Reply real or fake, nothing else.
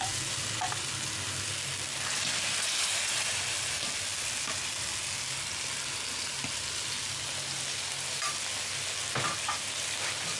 real